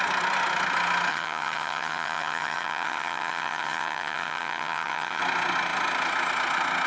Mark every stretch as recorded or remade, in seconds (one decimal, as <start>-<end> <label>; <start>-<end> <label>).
0.0-1.1 recorded; 1.1-5.2 remade; 5.2-6.9 recorded

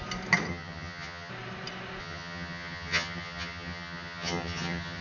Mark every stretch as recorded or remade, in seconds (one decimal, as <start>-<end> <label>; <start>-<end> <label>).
0.0-0.5 recorded; 0.5-1.3 remade; 1.3-2.0 recorded; 2.0-5.0 remade

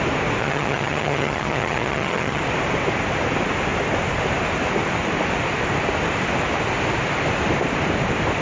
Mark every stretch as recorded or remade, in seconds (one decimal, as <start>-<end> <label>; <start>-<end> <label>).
0.0-0.4 recorded; 0.4-2.4 remade; 2.4-8.4 recorded

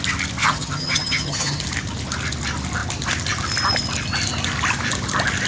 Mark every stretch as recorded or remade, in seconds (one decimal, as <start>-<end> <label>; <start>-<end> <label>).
0.0-0.4 recorded; 0.4-1.6 remade; 1.6-5.5 recorded

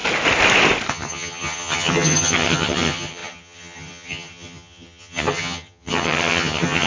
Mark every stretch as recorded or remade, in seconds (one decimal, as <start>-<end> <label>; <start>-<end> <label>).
0.0-0.9 recorded; 0.9-6.9 remade

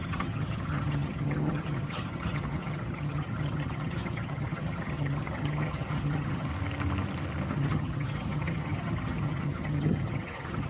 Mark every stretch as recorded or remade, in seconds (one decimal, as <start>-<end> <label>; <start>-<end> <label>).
0.0-6.5 remade; 6.5-7.5 recorded; 7.5-10.7 remade

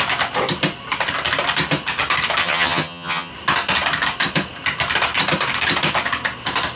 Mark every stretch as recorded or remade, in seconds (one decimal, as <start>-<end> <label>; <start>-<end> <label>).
0.0-2.4 recorded; 2.4-3.3 remade; 3.3-6.8 recorded